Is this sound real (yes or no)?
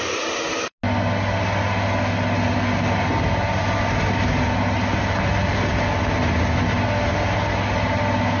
yes